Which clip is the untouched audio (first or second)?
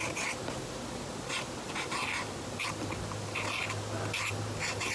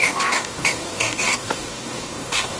first